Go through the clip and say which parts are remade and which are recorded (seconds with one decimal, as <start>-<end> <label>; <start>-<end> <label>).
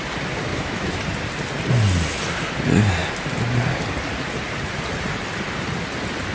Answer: 0.0-0.5 recorded; 0.5-1.0 remade; 1.0-6.3 recorded